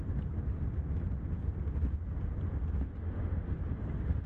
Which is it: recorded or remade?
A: recorded